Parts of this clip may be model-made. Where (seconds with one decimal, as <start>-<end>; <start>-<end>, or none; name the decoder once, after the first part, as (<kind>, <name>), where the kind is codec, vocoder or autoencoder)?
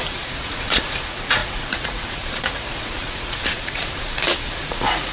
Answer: 0.0-5.1 (vocoder, Vocos)